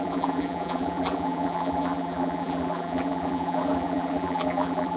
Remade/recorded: remade